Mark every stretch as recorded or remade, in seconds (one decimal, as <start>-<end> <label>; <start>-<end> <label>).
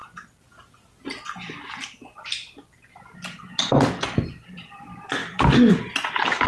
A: 0.0-6.5 recorded